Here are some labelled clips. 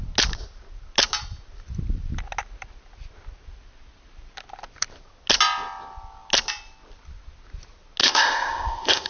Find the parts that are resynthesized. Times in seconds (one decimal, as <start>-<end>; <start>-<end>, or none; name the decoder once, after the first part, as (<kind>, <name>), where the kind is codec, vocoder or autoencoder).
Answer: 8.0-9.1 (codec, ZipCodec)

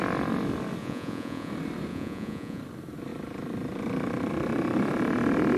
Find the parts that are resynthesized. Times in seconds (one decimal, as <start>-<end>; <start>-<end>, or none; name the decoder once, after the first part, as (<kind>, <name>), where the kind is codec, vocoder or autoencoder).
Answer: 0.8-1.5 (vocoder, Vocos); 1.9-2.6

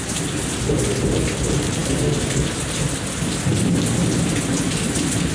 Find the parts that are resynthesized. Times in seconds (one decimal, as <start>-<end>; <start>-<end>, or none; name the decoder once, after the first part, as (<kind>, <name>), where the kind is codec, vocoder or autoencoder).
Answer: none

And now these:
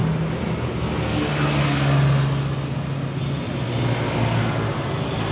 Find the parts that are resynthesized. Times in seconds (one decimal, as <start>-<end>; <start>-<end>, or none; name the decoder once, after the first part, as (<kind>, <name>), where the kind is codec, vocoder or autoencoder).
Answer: none

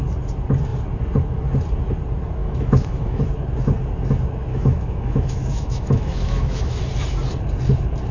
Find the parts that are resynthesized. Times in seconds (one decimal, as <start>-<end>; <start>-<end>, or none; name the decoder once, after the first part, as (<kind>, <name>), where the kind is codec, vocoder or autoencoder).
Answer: 2.4-3.2 (autoencoder, DAC-VAE); 4.5-6.8